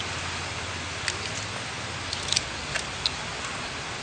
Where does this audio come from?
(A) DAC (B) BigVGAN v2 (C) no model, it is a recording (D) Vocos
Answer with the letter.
C